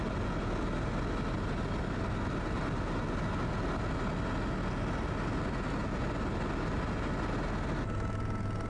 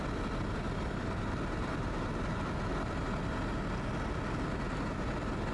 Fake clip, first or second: second